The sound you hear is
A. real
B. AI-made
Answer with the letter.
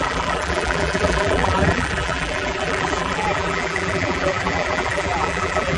B